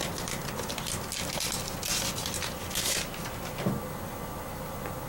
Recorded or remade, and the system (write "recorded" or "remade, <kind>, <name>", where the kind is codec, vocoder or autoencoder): recorded